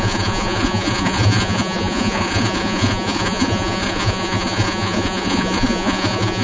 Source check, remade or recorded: remade